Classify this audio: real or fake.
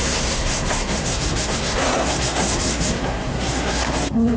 fake